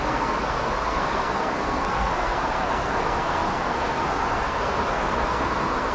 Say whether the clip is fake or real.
fake